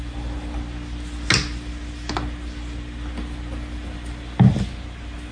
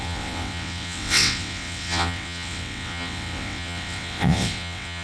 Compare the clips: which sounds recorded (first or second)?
first